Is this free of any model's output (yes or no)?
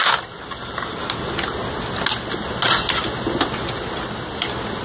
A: yes